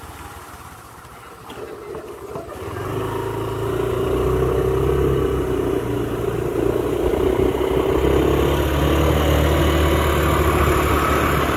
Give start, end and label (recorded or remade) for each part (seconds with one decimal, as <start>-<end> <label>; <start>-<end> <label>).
0.0-11.6 recorded